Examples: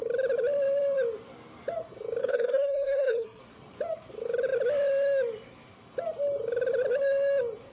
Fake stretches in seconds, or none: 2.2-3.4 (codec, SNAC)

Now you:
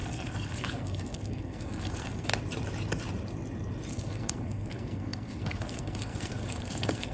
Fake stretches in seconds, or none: 0.0-2.3 (codec, SNAC); 3.9-7.1

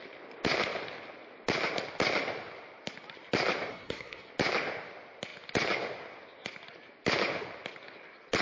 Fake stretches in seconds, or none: 3.7-4.3 (codec, SNAC)